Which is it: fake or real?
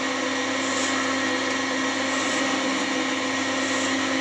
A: real